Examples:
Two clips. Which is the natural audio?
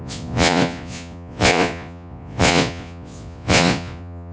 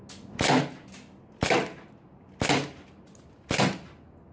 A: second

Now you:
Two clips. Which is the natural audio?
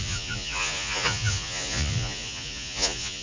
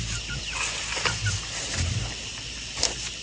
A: second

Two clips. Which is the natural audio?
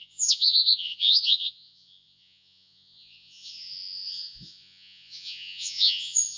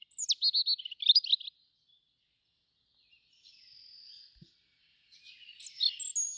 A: second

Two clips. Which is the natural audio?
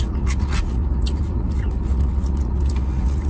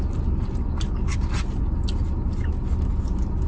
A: second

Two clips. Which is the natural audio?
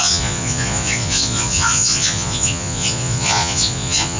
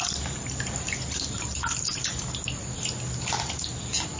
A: second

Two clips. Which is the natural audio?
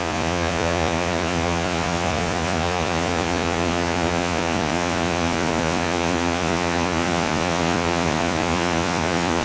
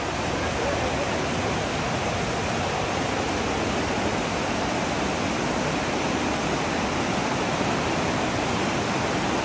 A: second